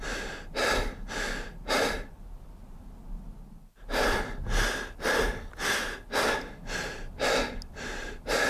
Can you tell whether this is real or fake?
real